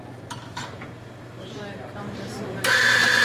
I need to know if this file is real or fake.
fake